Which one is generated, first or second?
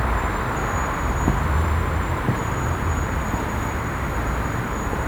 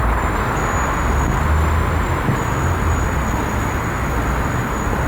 first